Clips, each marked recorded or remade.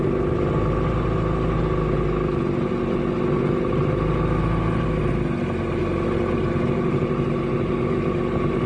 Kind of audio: recorded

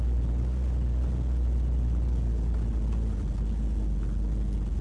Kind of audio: recorded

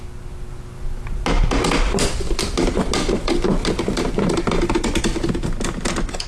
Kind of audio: recorded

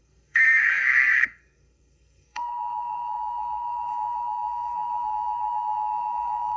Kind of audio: remade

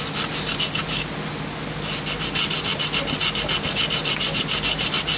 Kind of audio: recorded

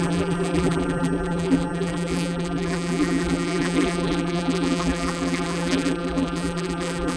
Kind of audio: remade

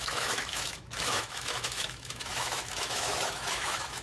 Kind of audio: remade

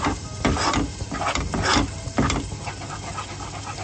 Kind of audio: recorded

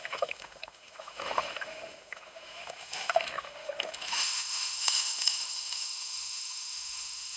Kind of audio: remade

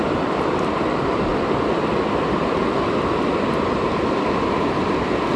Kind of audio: recorded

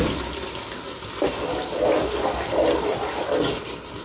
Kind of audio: recorded